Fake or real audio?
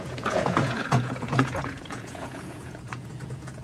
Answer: fake